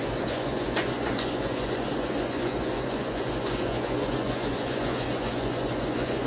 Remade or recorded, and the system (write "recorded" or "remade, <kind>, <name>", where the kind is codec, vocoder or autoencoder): remade, vocoder, Vocos